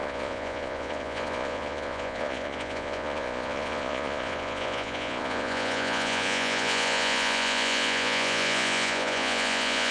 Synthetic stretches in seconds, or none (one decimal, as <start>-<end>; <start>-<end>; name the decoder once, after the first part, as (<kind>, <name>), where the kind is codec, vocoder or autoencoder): 0.0-9.9 (vocoder, Vocos)